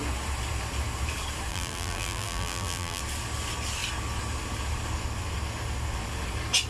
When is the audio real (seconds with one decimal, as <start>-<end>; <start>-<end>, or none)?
0.0-1.5; 3.0-6.7